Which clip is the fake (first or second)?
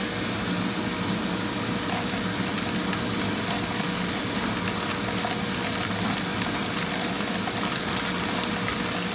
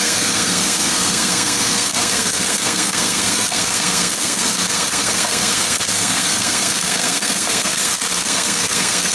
second